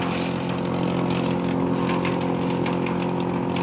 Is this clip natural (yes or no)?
yes